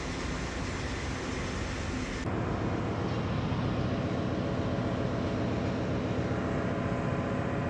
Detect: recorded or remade recorded